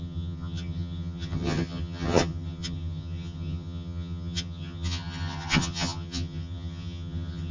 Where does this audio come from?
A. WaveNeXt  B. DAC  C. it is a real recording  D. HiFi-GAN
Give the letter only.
D